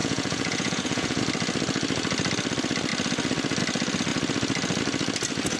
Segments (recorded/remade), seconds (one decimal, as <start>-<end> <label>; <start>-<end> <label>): 0.0-1.2 remade; 1.2-5.6 recorded